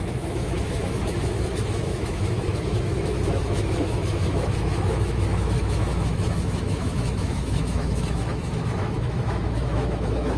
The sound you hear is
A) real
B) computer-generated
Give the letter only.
B